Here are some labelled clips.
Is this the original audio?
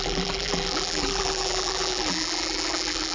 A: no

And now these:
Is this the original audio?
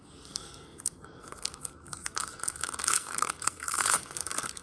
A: no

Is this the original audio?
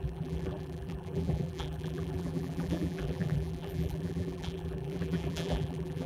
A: no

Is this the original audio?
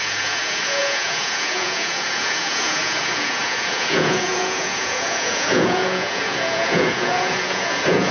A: no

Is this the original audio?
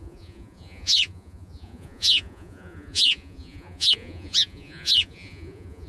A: no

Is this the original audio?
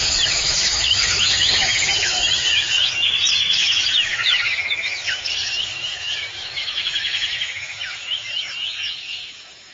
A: no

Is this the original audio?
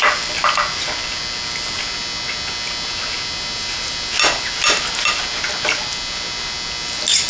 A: yes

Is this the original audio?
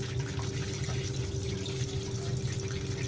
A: yes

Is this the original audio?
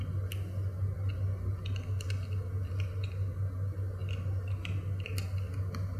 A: yes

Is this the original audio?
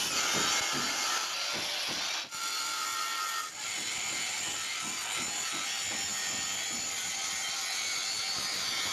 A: yes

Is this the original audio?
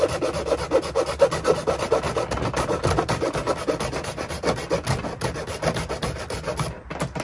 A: yes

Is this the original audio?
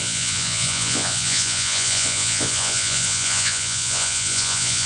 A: no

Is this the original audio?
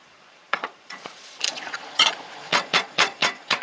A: no